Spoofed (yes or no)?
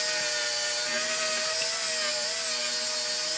no